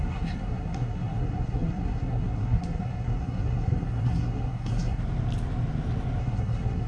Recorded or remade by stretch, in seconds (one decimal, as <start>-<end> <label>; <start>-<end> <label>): 0.0-5.0 remade; 5.0-6.2 recorded; 6.2-6.9 remade